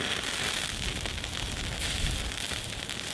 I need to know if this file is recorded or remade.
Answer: recorded